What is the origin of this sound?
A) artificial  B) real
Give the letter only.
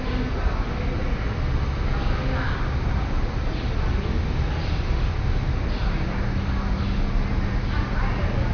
B